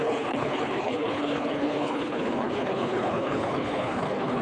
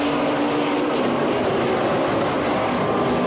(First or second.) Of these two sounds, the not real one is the first